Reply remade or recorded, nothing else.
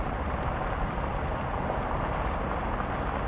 recorded